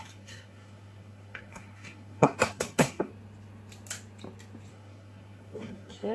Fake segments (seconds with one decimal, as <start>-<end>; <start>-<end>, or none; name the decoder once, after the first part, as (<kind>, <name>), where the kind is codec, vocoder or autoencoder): 0.0-3.1 (codec, SNAC); 4.7-6.1

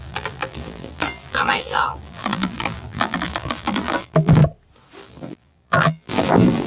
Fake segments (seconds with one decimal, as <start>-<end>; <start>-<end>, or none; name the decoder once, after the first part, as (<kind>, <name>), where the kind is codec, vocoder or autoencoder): 0.0-4.4 (vocoder, BigVGAN v2); 5.0-6.7